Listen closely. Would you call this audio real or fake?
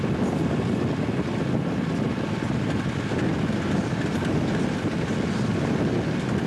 real